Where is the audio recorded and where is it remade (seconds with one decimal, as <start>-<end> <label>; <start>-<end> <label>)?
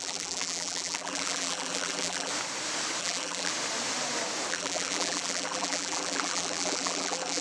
0.0-2.3 remade; 2.3-3.0 recorded; 3.0-3.5 remade; 3.5-4.5 recorded; 4.5-7.4 remade